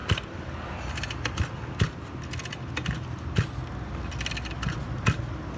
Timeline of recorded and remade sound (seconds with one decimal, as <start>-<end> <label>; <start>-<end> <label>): 0.0-0.7 remade; 0.7-5.6 recorded